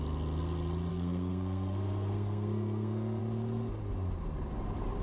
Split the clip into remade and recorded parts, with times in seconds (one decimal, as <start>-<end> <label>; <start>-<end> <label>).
0.0-0.9 recorded; 0.9-3.2 remade; 3.2-5.0 recorded